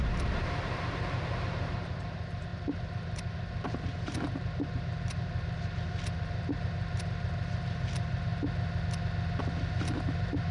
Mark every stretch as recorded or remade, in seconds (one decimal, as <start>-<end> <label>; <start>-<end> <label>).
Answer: 0.0-8.3 remade; 8.3-9.4 recorded; 9.4-10.5 remade